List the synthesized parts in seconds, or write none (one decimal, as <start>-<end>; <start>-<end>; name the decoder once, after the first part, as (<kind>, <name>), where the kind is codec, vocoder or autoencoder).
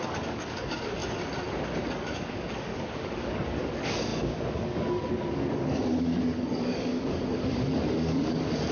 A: 0.0-1.0 (codec, DAC); 1.8-8.7